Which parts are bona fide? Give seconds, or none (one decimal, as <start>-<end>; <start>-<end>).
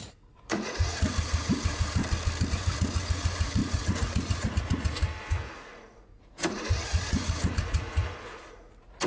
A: 2.0-2.5